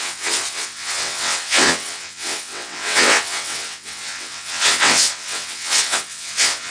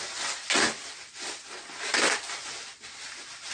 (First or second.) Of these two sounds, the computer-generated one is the first